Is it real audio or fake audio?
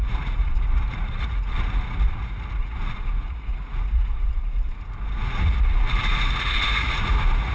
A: fake